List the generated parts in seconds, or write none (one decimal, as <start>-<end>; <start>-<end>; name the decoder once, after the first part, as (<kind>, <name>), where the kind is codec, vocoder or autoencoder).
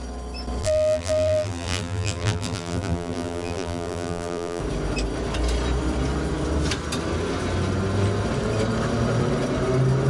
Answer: 0.6-4.6 (vocoder, BigVGAN v2)